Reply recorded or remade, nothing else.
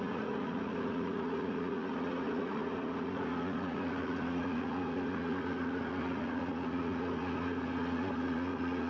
remade